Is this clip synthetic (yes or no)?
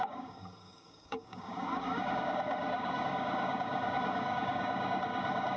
yes